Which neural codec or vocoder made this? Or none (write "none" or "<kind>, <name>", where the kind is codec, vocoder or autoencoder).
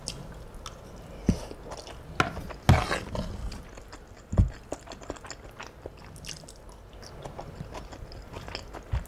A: none